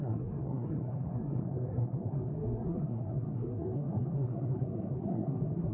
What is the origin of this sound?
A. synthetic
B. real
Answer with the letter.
A